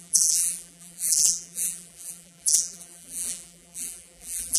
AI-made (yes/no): yes